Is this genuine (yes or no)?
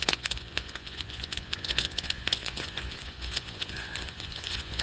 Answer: no